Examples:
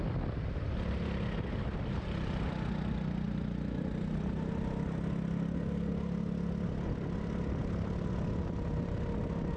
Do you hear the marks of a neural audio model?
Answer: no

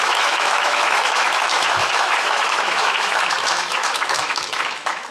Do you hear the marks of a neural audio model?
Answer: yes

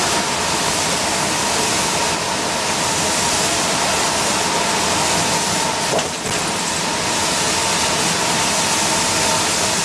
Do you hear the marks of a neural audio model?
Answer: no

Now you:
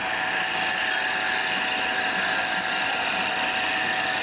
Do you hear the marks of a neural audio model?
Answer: no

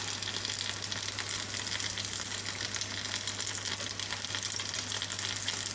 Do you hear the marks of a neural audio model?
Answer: no